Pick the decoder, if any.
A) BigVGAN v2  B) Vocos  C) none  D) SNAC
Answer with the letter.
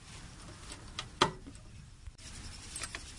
C